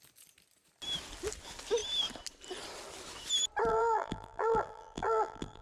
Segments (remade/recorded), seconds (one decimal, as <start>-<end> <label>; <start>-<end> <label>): 0.0-3.7 recorded; 3.7-5.6 remade